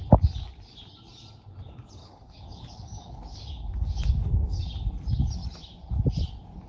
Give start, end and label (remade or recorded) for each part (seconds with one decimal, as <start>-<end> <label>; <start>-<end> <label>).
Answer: 0.0-2.0 recorded; 2.0-4.6 remade; 4.6-6.7 recorded